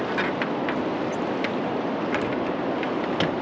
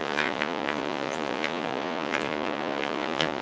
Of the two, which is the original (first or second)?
first